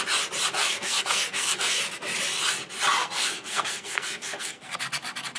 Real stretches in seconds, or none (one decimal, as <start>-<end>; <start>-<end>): 0.0-0.6; 1.8-3.0; 4.8-5.4